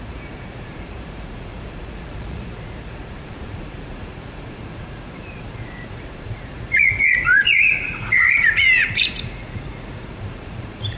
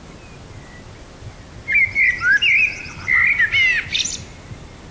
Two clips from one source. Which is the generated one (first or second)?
first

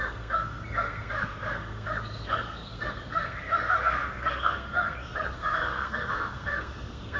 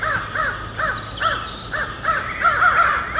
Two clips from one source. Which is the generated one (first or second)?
first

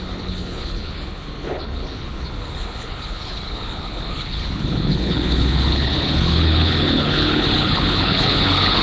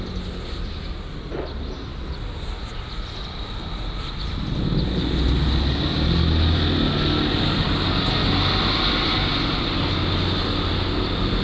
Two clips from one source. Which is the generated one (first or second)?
first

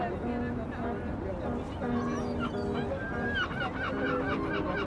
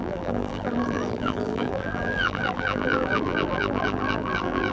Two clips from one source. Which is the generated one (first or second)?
second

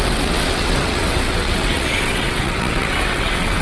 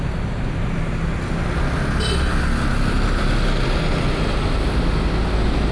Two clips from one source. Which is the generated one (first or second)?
first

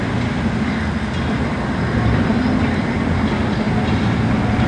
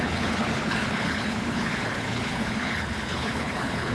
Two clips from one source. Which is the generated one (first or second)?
second